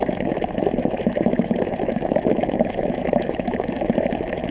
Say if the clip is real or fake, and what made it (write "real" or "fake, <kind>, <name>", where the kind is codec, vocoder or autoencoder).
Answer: fake, autoencoder, DAC-VAE